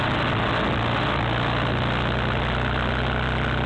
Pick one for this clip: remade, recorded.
recorded